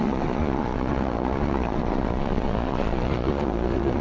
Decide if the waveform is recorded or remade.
remade